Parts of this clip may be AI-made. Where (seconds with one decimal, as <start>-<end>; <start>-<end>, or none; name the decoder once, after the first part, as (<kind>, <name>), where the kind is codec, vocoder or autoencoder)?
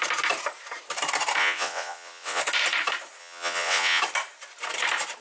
1.4-2.4 (vocoder, WaveNeXt); 3.2-4.0